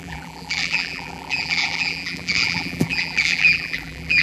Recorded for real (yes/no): no